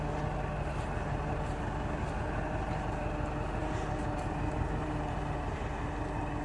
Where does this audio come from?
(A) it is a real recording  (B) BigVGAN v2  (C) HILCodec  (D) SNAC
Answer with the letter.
A